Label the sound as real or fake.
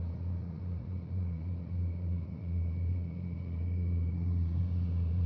fake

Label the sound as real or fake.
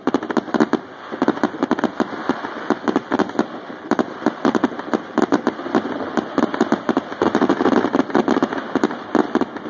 real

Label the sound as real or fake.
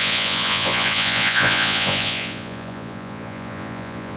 fake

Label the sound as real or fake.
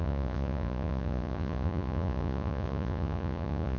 fake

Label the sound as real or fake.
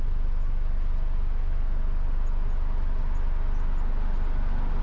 real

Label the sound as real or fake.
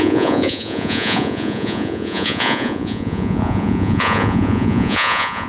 fake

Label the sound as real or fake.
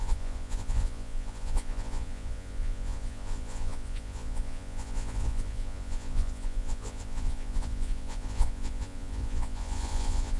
fake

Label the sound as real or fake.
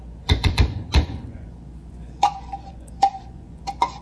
fake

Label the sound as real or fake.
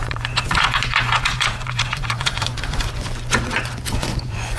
fake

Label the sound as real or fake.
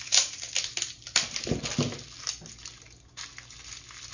real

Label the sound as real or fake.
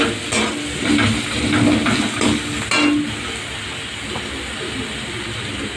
real